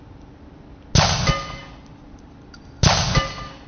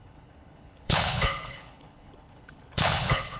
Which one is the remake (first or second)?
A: second